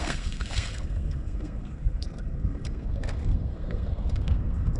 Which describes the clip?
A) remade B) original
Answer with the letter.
A